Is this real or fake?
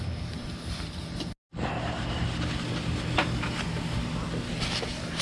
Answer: real